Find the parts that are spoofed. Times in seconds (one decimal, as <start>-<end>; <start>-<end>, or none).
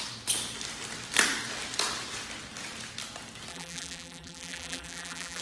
3.5-5.4